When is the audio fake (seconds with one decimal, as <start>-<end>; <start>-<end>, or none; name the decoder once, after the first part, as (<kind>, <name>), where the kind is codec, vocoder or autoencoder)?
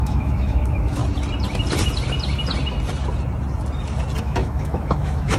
0.0-1.0 (autoencoder, DAC-VAE); 4.2-5.4